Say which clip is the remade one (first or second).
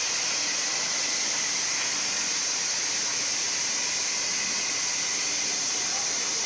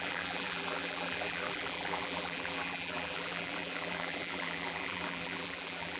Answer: second